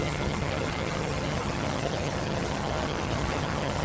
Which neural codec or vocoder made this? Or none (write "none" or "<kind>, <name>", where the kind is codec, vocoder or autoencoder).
vocoder, HiFi-GAN